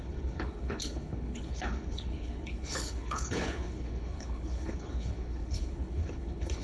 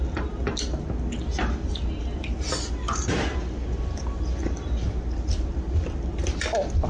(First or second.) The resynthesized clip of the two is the first